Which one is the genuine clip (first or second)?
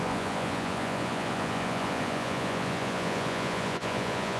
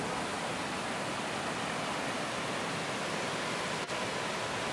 second